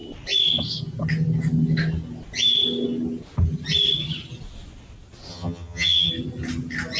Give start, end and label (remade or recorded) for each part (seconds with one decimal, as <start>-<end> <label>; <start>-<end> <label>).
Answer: 0.0-5.3 recorded; 5.3-6.1 remade; 6.1-7.0 recorded